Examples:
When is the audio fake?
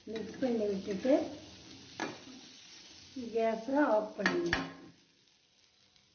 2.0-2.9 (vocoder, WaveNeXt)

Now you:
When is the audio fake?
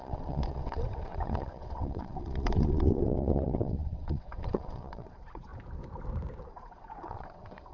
0.0-5.5 (vocoder, WaveNeXt); 6.4-7.7